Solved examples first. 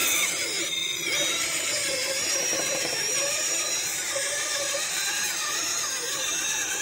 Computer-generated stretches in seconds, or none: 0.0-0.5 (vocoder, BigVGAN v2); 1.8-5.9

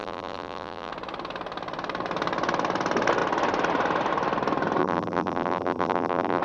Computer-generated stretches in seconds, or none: 0.0-0.9 (vocoder, BigVGAN v2); 4.8-6.4